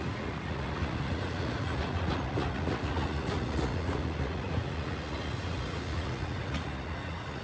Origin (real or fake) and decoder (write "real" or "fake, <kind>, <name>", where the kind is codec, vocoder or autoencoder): fake, vocoder, Vocos